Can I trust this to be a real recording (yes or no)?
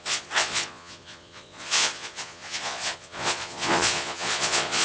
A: no